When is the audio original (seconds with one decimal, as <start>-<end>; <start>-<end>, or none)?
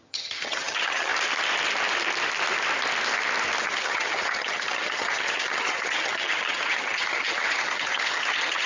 1.1-3.6